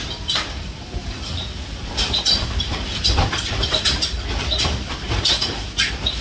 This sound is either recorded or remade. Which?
remade